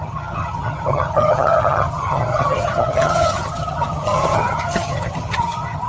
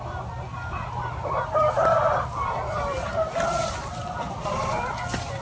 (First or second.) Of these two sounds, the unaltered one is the second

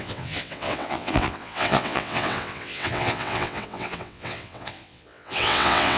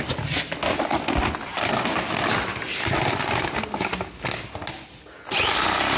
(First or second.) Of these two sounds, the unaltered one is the second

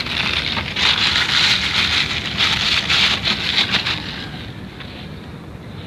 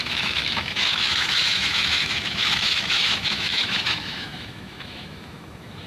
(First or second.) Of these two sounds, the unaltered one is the first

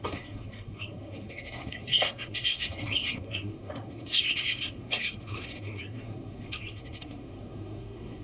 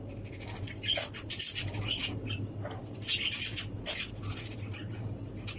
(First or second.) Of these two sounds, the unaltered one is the second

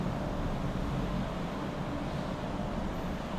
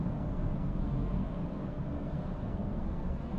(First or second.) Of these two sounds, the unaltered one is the first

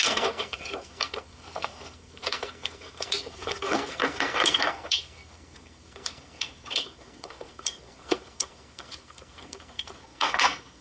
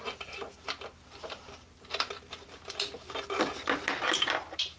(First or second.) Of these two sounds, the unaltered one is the second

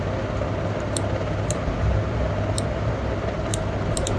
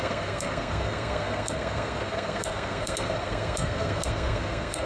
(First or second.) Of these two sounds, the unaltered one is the first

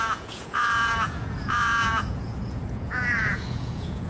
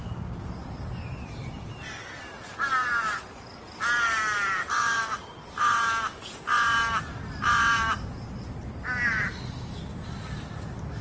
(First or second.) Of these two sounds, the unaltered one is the second